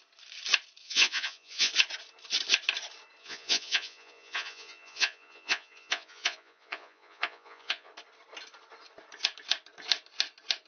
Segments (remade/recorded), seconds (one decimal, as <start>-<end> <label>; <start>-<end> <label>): 0.0-0.8 recorded; 0.8-1.7 remade; 1.7-3.2 recorded; 3.2-7.9 remade; 7.9-10.7 recorded